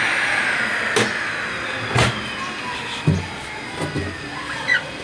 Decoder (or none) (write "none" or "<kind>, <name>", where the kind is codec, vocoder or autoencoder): none